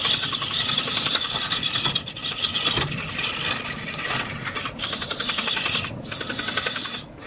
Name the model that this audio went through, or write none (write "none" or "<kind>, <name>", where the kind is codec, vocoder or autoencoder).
none